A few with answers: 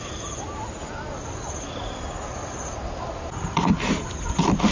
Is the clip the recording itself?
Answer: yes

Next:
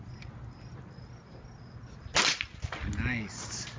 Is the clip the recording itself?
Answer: yes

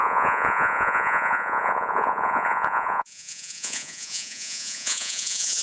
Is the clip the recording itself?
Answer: no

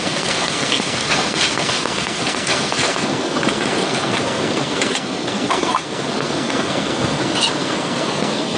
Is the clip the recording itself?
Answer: no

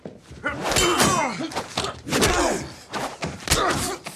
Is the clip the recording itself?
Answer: yes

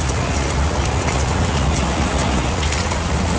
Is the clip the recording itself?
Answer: no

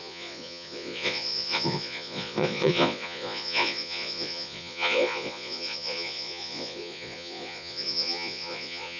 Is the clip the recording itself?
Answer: no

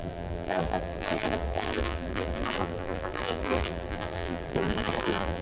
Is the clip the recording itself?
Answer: no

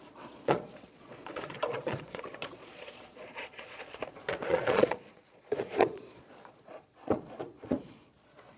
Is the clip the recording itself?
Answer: no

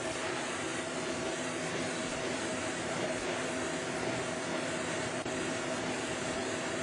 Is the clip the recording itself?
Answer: yes